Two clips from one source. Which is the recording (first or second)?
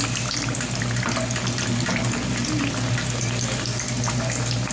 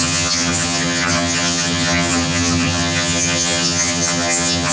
first